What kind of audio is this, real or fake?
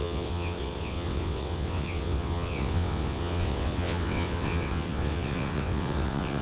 fake